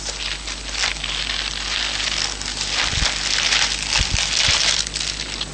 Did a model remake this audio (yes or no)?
no